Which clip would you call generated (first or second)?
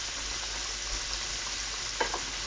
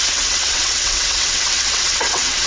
second